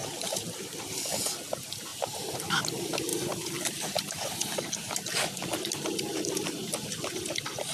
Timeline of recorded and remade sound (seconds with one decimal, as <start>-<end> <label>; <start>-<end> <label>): 0.0-0.8 remade; 0.8-3.1 recorded; 3.1-7.3 remade; 7.3-7.7 recorded